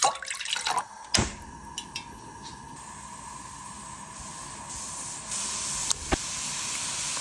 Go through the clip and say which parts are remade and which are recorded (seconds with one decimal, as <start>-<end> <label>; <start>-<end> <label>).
0.0-7.2 recorded